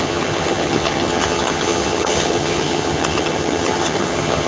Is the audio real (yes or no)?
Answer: no